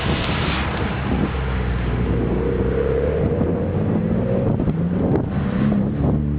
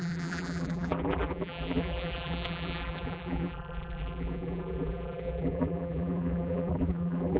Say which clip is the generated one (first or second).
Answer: second